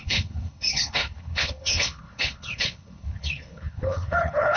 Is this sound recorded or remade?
remade